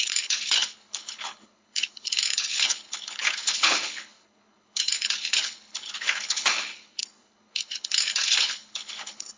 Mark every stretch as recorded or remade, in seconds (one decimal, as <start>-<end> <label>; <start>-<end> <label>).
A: 0.0-9.4 remade